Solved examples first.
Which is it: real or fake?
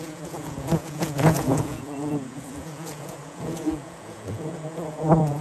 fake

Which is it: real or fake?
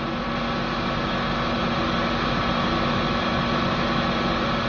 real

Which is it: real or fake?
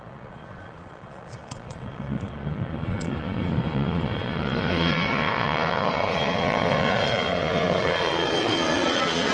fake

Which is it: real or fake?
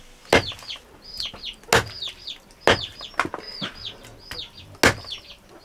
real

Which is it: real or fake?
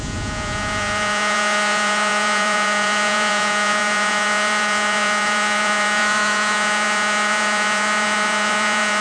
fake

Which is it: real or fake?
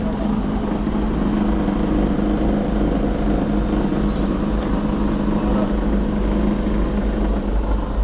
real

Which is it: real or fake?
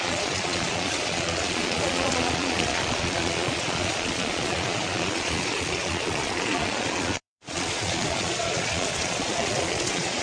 fake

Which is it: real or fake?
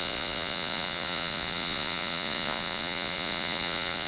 fake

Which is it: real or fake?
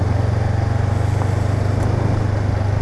real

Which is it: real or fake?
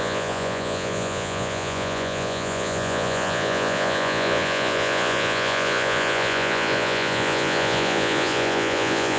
fake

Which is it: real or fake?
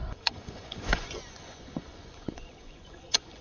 fake